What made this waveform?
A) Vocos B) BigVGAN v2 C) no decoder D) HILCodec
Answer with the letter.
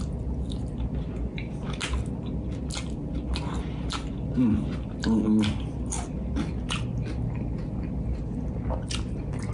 C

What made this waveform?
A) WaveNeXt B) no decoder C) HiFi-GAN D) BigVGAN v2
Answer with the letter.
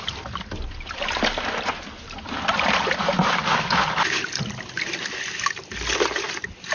B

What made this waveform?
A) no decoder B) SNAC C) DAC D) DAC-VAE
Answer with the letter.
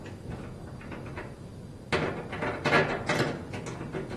A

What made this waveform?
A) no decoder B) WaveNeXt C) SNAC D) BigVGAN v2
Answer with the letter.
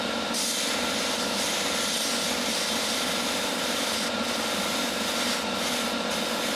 A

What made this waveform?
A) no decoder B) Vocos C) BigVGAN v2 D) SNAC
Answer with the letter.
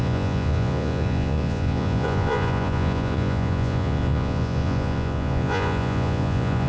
B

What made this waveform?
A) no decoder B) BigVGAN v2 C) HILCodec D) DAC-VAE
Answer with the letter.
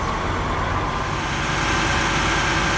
A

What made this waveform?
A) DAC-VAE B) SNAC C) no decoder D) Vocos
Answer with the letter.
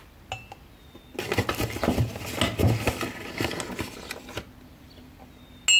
C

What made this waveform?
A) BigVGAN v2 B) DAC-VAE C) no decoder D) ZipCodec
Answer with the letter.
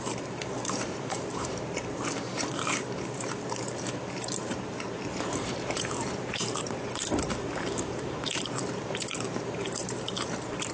A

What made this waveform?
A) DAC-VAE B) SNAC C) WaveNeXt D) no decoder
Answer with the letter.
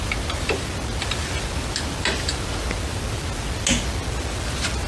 D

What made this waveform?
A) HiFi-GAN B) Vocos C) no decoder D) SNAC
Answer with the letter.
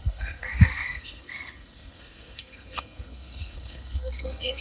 D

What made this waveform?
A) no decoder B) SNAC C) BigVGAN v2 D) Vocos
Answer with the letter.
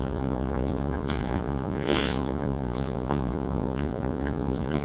D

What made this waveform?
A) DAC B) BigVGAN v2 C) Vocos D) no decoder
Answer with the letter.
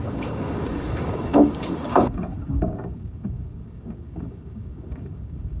A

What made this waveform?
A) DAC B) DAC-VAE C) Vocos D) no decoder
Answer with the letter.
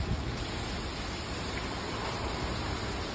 D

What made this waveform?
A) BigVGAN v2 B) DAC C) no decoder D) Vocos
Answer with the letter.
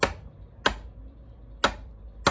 C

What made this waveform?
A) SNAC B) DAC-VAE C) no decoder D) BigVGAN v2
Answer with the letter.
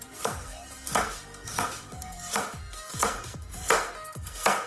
A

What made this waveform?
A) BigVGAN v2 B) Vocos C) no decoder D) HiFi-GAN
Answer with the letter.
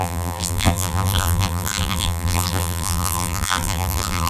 A